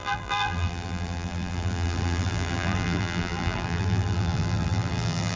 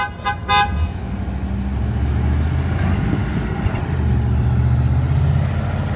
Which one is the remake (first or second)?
first